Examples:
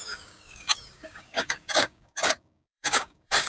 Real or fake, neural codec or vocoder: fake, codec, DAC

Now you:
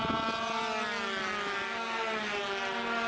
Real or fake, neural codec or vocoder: real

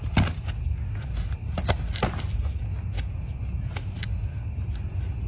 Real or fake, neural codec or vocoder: real